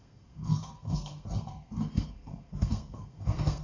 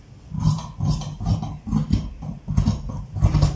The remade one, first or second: first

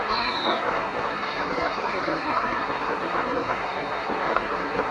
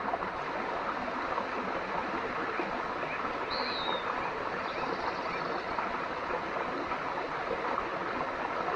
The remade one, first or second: first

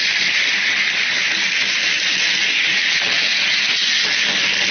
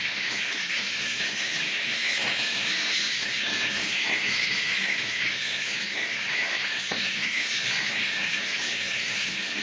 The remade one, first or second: second